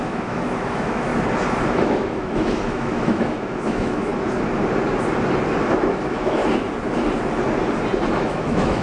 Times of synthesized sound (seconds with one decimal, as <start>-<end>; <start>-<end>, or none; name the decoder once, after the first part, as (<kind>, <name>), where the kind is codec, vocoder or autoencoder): 0.0-1.1 (autoencoder, DAC-VAE); 1.7-4.1; 5.9-6.4; 8.2-8.8